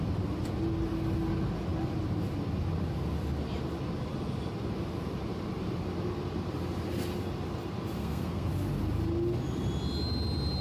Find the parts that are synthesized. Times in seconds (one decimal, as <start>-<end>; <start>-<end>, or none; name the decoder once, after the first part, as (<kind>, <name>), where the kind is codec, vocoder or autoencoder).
8.0-8.5 (codec, SNAC)